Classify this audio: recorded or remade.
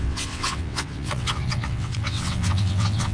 remade